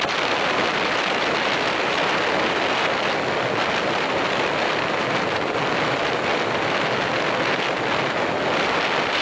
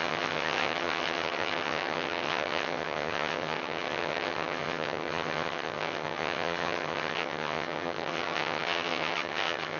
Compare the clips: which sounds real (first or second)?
first